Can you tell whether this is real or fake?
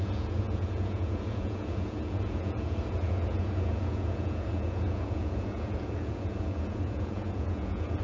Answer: fake